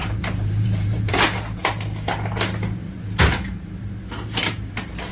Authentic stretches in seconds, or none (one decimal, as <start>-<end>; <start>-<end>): 1.2-2.8; 3.9-5.1